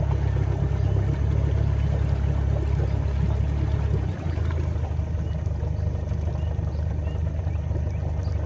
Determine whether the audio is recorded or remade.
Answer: recorded